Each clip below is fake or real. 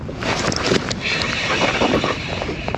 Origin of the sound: real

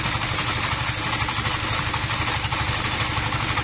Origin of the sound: fake